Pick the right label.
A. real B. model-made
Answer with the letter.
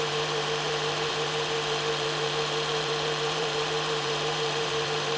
B